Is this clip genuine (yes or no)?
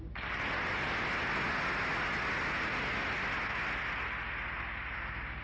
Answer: yes